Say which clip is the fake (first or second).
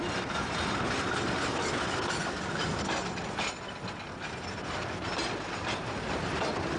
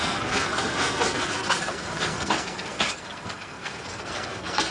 second